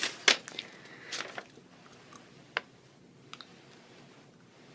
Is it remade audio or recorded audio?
recorded